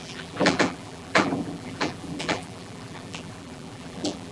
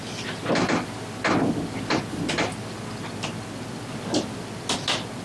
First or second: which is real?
second